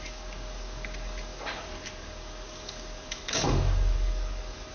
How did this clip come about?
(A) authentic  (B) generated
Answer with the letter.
B